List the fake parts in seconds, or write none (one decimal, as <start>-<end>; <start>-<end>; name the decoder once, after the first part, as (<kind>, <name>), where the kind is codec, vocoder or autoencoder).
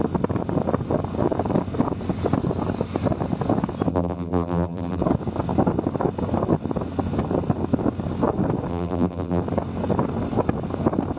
3.9-5.0 (vocoder, BigVGAN v2); 8.7-9.4